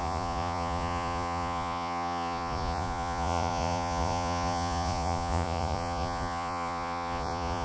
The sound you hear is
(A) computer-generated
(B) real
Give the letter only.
A